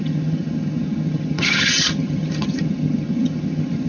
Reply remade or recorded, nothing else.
remade